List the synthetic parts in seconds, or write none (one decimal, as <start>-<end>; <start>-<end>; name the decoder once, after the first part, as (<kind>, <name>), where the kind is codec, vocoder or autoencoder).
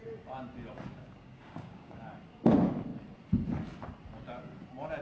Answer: 0.9-2.1 (codec, DAC)